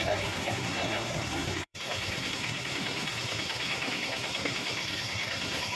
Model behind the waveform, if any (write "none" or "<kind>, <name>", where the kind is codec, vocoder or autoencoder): codec, SNAC